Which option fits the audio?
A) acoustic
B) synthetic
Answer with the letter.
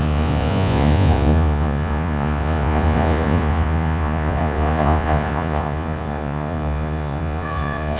B